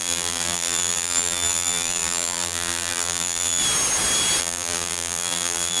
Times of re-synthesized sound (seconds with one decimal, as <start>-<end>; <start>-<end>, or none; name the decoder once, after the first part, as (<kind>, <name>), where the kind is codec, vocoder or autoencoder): 0.0-3.6 (vocoder, BigVGAN v2); 4.4-5.8